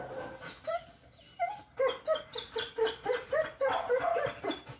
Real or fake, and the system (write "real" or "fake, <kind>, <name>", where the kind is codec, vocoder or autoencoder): real